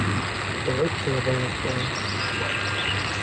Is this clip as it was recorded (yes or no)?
yes